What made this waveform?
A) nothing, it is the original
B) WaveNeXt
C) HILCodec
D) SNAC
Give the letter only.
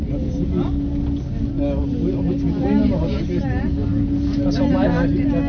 A